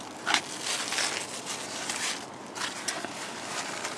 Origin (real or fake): real